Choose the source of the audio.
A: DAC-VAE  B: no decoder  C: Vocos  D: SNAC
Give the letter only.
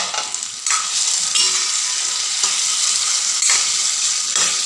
B